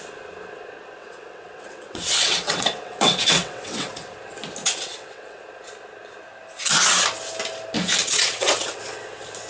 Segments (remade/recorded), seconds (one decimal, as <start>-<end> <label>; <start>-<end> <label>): 0.0-1.0 recorded; 1.0-3.9 remade; 3.9-4.6 recorded; 4.6-5.4 remade; 5.4-8.0 recorded; 8.0-8.8 remade; 8.8-9.5 recorded